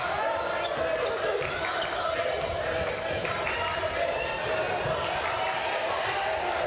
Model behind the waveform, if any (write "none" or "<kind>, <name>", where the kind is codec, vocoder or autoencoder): none